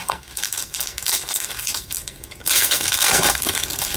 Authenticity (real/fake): fake